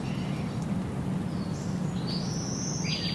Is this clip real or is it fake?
real